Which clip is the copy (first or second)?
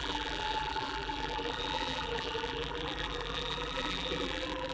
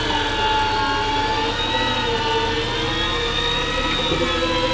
first